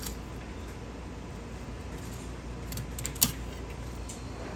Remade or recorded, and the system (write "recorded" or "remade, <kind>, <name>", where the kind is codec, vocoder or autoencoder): recorded